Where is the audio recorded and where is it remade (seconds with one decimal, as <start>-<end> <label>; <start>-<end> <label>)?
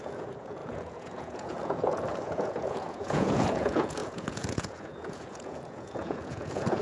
0.0-6.8 remade